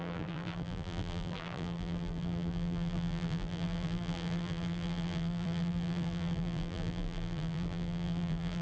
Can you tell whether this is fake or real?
fake